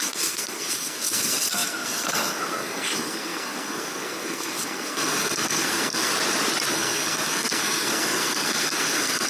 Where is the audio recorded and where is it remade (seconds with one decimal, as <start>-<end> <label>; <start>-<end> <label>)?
0.0-6.1 remade; 6.1-6.7 recorded; 6.7-9.3 remade